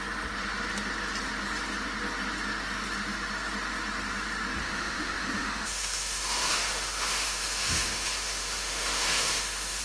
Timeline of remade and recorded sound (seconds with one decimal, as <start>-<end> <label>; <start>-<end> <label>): 0.0-4.6 recorded; 4.6-9.8 remade